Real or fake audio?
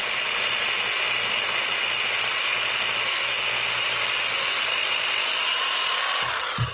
real